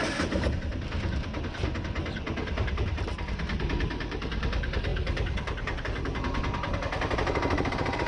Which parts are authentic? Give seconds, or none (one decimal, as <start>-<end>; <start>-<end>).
0.0-8.1

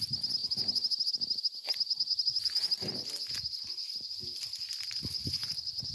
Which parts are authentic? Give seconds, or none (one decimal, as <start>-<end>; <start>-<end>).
0.0-5.9

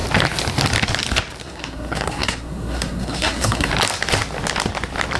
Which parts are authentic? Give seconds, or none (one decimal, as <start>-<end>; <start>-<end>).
0.0-1.4; 3.7-5.2

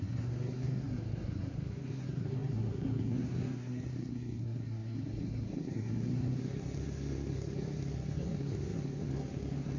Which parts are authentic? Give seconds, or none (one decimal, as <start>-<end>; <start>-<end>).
none

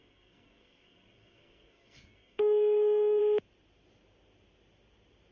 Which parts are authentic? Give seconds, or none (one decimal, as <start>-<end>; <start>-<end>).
3.2-5.3

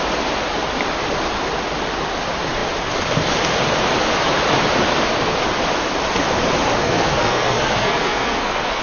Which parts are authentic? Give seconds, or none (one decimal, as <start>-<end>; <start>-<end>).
0.0-6.8